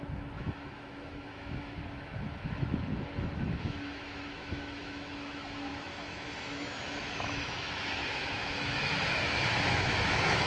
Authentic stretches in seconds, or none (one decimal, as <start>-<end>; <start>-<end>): 2.9-3.5